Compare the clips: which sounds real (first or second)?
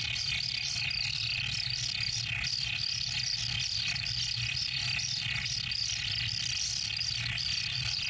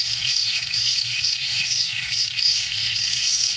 first